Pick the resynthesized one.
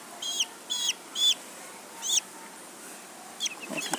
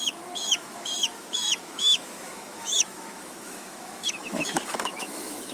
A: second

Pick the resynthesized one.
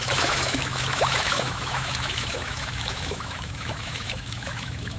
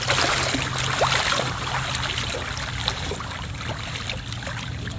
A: first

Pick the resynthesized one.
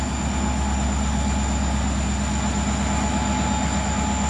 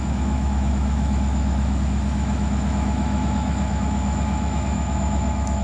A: second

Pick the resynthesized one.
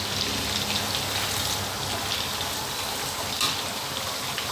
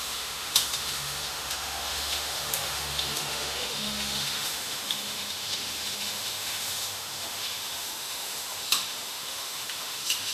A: second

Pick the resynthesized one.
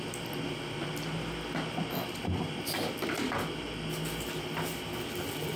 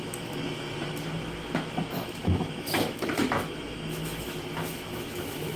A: second